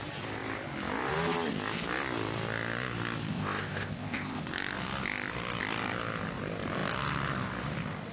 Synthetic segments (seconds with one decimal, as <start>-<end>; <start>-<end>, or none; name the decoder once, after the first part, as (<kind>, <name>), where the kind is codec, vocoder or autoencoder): 3.3-4.4 (codec, ZipCodec)